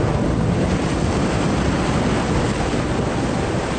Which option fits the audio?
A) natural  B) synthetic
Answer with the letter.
A